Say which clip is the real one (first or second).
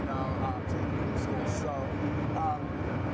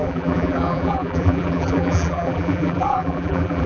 first